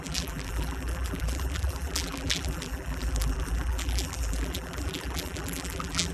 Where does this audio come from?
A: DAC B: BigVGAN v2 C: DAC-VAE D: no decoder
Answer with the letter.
B